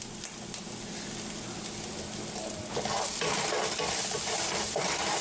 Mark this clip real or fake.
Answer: real